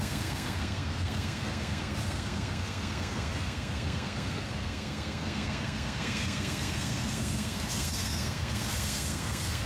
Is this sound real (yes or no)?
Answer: no